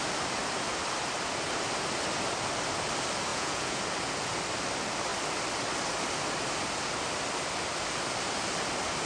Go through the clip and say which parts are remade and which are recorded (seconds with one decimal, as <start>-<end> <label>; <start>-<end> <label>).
0.0-3.3 recorded; 3.3-3.8 remade; 3.8-9.1 recorded